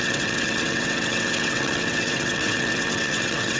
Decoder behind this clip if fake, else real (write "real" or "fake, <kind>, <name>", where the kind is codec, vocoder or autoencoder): fake, vocoder, WaveNeXt